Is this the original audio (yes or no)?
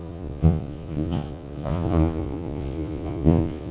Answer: no